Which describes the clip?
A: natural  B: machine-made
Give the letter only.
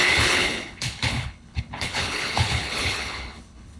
B